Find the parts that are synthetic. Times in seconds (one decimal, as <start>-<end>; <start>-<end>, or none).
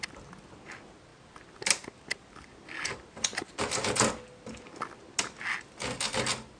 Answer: none